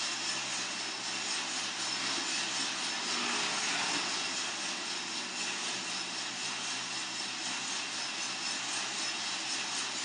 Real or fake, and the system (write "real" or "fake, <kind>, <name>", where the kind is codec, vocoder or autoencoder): real